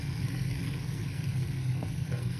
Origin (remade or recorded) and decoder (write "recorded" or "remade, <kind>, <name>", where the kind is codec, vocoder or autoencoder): remade, codec, SNAC